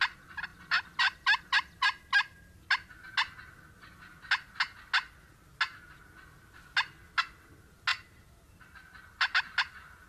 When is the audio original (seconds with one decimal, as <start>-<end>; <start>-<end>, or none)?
0.0-10.1